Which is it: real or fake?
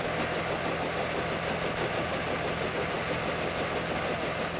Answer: real